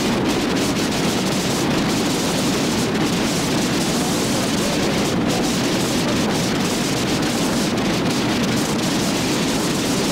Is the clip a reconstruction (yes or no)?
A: no